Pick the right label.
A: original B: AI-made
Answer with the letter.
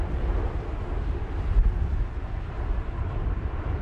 B